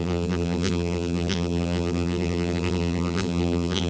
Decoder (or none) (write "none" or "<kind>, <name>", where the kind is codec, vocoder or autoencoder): vocoder, BigVGAN v2